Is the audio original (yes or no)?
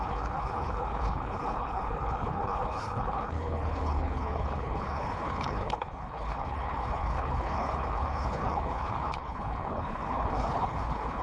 no